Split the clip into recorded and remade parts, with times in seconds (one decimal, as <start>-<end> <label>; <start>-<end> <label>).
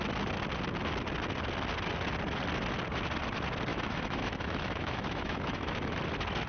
0.0-3.7 recorded; 3.7-6.0 remade; 6.0-6.5 recorded